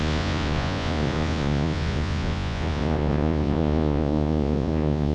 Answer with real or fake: fake